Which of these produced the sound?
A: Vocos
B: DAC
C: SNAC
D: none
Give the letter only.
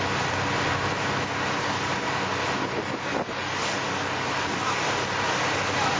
D